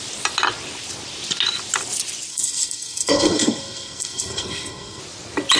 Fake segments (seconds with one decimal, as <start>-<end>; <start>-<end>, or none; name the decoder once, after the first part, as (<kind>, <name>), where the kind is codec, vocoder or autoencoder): 2.3-5.0 (codec, SNAC)